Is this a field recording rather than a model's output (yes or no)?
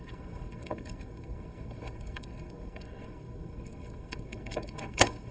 no